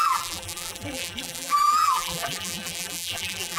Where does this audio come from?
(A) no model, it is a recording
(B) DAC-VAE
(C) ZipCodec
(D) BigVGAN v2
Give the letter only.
D